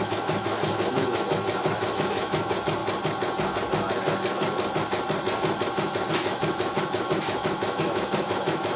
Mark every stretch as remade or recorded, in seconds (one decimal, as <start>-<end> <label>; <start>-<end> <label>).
0.0-2.8 remade; 2.8-6.1 recorded; 6.1-8.8 remade